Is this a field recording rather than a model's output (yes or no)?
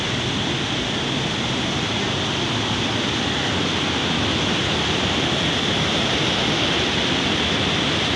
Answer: yes